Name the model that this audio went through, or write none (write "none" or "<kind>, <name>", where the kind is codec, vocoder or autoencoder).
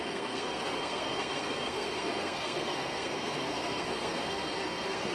codec, SNAC